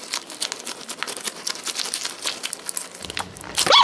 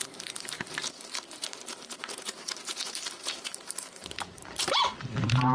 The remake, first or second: second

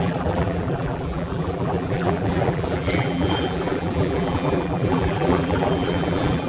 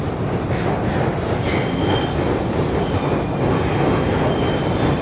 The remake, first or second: first